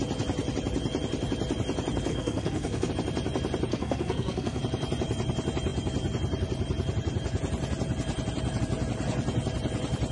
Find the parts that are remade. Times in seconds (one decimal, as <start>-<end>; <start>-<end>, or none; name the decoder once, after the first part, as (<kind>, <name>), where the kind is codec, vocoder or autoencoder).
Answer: 2.1-2.9 (codec, SNAC); 3.7-4.6